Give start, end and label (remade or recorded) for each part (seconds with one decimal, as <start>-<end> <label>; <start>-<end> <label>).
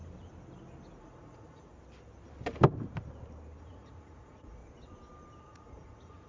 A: 0.0-1.0 recorded; 1.0-1.7 remade; 1.7-3.6 recorded; 3.6-4.6 remade; 4.6-5.4 recorded; 5.4-6.3 remade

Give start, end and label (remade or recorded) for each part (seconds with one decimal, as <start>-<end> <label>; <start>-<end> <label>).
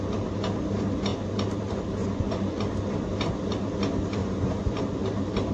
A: 0.0-2.0 recorded; 2.0-2.6 remade; 2.6-4.2 recorded; 4.2-4.8 remade; 4.8-5.5 recorded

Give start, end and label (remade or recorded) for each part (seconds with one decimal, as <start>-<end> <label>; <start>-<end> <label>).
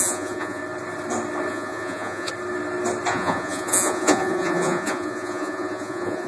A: 0.0-0.6 remade; 0.6-1.5 recorded; 1.5-2.3 remade; 2.3-3.1 recorded; 3.1-6.3 remade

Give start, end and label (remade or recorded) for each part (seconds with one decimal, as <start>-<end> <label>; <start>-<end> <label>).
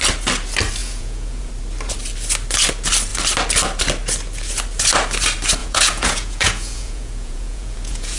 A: 0.0-0.8 recorded; 0.8-1.5 remade; 1.5-5.6 recorded; 5.6-8.2 remade